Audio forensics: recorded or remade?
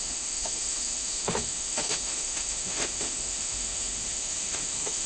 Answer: remade